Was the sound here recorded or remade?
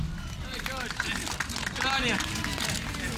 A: recorded